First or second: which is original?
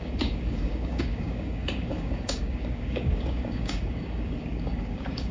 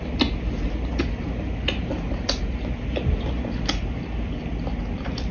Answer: second